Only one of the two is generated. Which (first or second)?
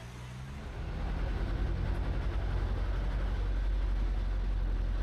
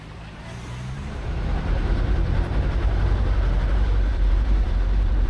second